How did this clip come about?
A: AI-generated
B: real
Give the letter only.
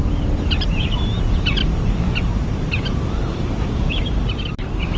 A